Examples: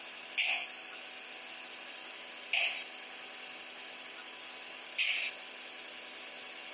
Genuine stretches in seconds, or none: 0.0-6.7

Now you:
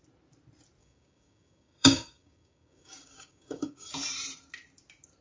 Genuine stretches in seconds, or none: 0.0-0.8; 3.9-5.2

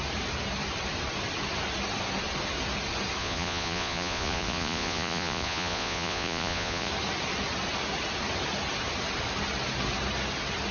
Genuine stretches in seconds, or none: 0.0-3.2; 6.9-10.7

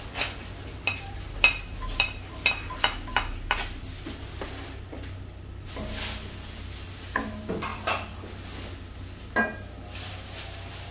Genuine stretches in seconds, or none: 0.0-10.9

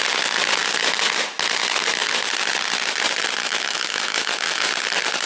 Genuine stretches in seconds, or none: 0.0-3.4; 4.7-5.3